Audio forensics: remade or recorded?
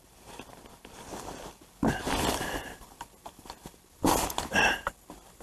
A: recorded